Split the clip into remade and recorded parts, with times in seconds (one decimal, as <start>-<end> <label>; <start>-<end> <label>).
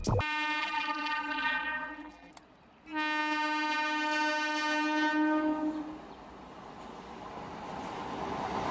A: 0.0-0.6 recorded; 0.6-2.3 remade; 2.3-8.7 recorded